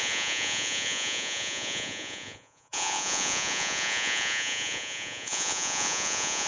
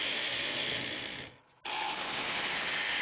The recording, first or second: second